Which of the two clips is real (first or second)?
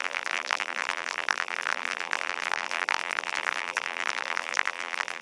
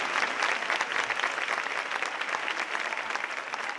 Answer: second